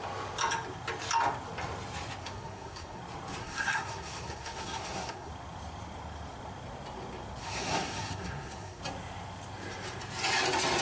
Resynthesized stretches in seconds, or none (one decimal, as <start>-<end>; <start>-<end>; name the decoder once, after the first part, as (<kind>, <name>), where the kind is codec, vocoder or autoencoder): 2.2-3.0 (codec, SNAC); 3.4-5.3; 7.4-8.8